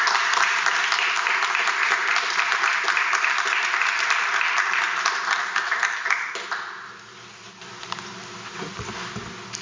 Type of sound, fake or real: real